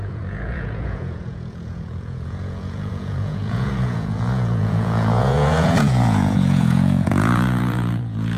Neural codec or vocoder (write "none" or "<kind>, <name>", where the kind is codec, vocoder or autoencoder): vocoder, Vocos